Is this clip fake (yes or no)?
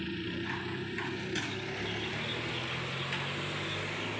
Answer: no